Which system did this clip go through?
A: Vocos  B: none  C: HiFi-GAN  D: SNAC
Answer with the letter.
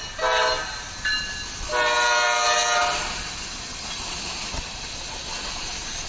B